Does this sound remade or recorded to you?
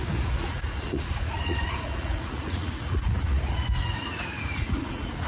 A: remade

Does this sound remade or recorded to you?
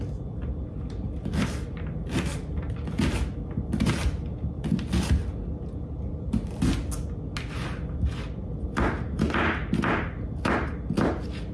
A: recorded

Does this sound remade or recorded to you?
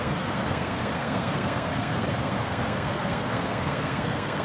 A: remade